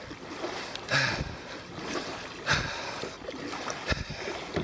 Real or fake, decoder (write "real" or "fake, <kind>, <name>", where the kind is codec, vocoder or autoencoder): real